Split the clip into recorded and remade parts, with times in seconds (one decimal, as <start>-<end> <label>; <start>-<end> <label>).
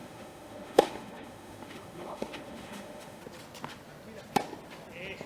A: 0.0-3.2 remade; 3.2-5.3 recorded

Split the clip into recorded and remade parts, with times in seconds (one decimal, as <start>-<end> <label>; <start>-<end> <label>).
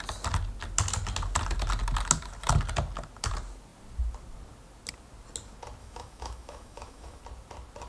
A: 0.0-5.8 recorded; 5.8-7.2 remade; 7.2-7.9 recorded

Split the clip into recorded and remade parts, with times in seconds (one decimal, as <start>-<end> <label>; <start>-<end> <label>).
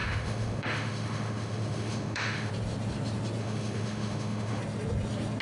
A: 0.0-2.5 remade; 2.5-3.4 recorded; 3.4-4.6 remade; 4.6-5.4 recorded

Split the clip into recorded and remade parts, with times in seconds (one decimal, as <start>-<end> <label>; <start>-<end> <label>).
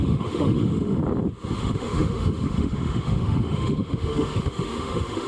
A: 0.0-1.0 remade; 1.0-1.6 recorded; 1.6-5.3 remade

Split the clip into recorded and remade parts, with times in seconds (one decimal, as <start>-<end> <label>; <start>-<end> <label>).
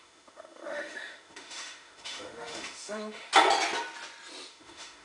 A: 0.0-3.3 remade; 3.3-4.5 recorded; 4.5-5.0 remade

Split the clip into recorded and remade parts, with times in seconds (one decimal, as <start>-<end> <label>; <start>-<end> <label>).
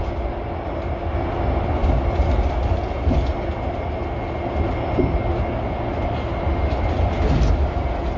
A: 0.0-8.2 recorded